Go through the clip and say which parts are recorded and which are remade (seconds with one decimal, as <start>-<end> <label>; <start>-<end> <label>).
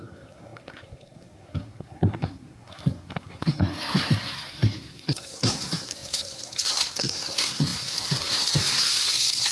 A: 0.0-9.5 remade